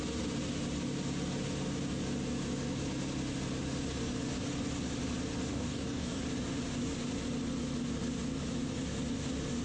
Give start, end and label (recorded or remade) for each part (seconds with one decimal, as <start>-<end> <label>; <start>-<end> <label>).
0.0-5.5 recorded; 5.5-6.2 remade; 6.2-9.6 recorded

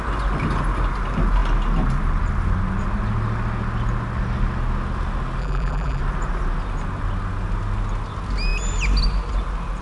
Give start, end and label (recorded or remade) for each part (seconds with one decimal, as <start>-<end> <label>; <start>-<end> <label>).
0.0-5.4 recorded; 5.4-6.0 remade; 6.0-9.8 recorded

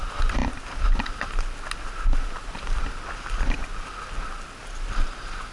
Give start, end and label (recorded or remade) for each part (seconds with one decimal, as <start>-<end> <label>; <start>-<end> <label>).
0.0-0.4 recorded; 0.4-1.0 remade; 1.0-5.5 recorded

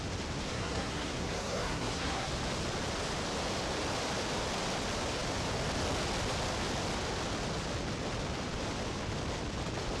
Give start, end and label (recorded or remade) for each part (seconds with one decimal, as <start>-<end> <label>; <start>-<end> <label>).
0.0-0.5 recorded; 0.5-2.3 remade; 2.3-10.0 recorded

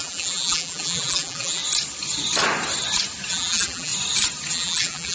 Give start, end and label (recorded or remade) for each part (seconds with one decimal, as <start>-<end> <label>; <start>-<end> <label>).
0.0-1.6 remade; 1.6-3.3 recorded; 3.3-3.9 remade; 3.9-4.5 recorded; 4.5-5.1 remade